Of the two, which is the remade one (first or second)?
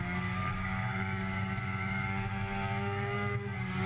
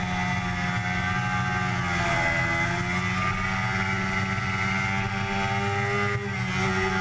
first